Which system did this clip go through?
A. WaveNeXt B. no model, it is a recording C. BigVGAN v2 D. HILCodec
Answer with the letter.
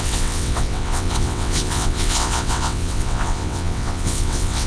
A